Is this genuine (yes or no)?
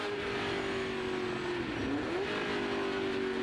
yes